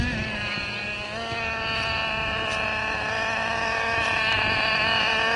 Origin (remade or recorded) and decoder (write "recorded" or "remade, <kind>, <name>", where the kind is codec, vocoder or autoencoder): recorded